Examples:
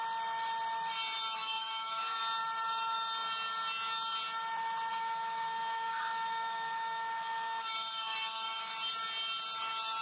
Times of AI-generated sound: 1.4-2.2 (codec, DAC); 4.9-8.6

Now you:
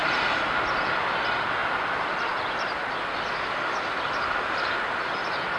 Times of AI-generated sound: none